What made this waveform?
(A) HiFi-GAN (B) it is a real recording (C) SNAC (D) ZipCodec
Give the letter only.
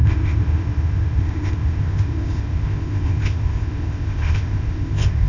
D